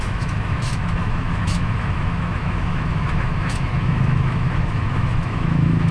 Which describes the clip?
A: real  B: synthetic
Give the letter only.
B